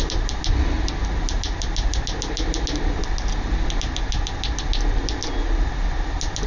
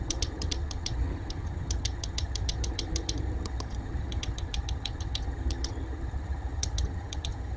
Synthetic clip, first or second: second